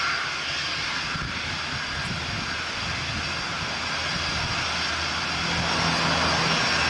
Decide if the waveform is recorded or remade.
recorded